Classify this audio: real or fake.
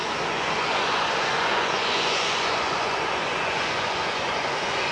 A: fake